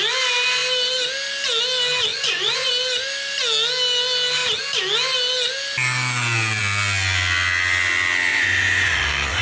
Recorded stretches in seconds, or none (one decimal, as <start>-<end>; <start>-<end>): 0.0-2.1; 2.7-8.3